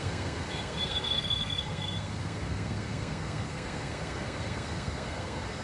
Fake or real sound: fake